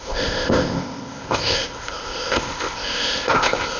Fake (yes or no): yes